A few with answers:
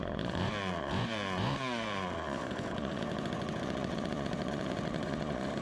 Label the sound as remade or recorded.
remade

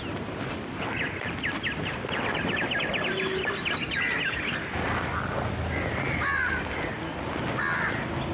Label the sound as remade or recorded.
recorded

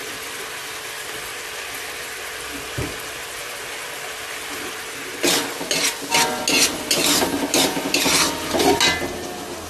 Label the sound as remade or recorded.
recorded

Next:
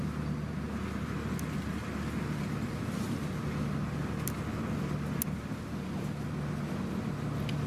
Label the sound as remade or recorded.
recorded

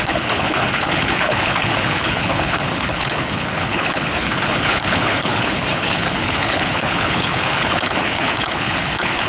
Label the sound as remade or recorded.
remade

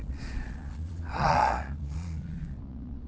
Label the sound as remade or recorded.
remade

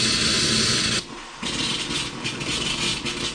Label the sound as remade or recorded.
recorded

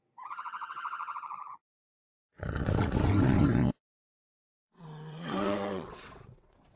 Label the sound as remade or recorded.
remade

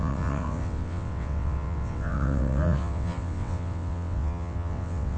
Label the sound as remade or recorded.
remade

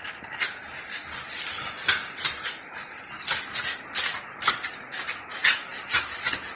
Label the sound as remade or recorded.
recorded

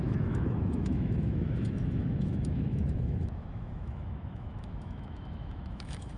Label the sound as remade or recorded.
remade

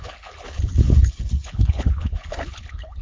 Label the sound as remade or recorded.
remade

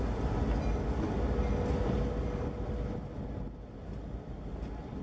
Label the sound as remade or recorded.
recorded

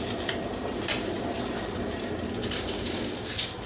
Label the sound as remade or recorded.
remade